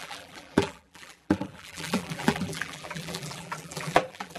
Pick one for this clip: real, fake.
fake